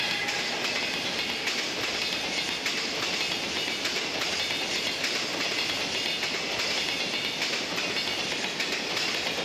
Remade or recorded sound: recorded